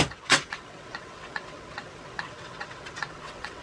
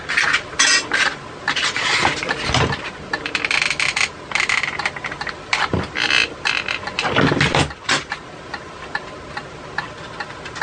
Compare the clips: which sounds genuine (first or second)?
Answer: second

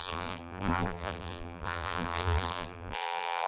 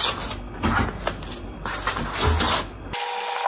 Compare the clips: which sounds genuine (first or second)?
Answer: second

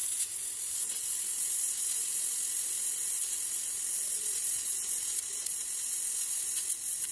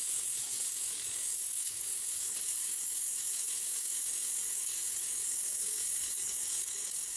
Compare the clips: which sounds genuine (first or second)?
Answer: first